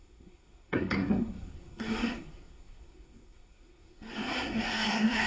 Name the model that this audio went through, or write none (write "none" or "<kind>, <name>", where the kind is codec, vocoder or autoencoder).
codec, SNAC